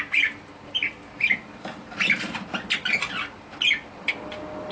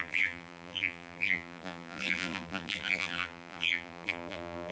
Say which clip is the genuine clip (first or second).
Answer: first